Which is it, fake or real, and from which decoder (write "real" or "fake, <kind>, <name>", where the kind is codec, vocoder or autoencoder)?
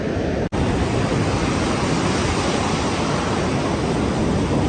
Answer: real